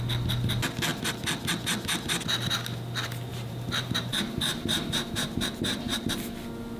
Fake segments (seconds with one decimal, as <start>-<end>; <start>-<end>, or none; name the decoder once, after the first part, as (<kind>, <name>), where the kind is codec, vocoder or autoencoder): 3.3-6.1 (vocoder, BigVGAN v2)